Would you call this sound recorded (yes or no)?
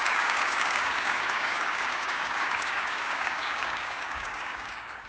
no